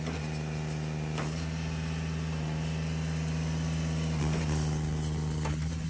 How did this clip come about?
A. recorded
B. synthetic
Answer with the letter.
A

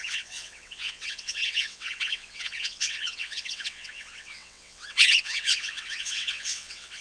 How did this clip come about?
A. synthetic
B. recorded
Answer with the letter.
A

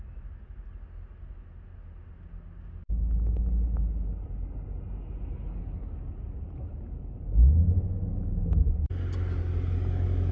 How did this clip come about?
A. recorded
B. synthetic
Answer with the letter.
A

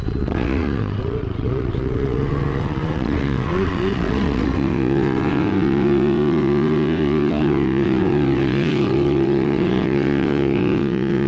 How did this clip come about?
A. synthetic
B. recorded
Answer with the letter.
A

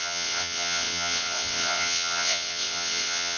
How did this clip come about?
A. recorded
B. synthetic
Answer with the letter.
B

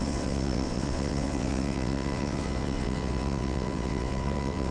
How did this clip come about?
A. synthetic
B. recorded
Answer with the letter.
A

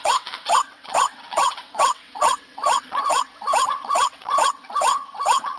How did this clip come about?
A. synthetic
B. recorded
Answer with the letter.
A